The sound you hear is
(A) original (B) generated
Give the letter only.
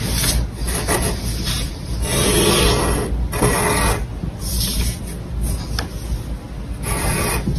A